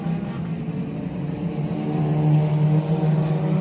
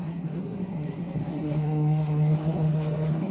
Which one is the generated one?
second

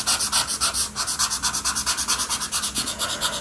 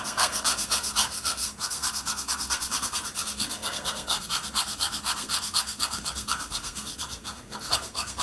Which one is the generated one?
second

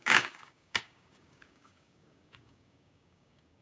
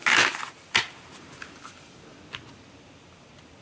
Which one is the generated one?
first